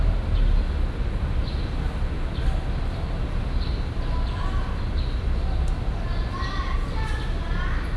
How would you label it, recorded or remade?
recorded